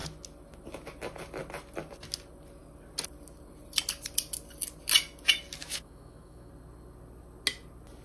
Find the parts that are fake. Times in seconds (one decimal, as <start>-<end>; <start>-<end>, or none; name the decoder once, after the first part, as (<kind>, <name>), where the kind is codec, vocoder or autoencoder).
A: 5.6-6.5 (autoencoder, DAC-VAE)